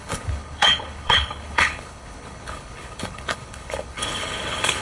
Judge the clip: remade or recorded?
remade